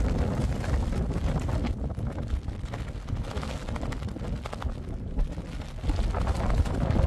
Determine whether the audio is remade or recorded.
recorded